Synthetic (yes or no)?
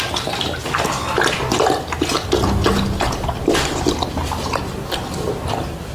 no